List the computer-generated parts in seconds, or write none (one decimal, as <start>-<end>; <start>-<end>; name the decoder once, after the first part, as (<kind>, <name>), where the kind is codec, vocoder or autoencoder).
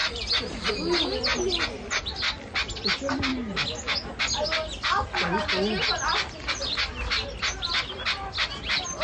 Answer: none